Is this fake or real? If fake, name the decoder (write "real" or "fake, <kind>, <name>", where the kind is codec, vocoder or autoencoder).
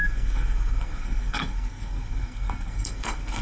fake, codec, SNAC